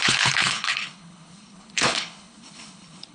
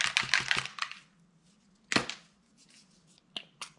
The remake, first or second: first